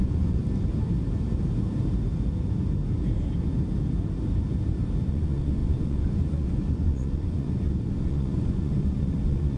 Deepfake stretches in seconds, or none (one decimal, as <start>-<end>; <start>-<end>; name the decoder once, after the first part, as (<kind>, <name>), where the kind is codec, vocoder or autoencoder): 0.0-0.4 (vocoder, Vocos); 5.1-9.6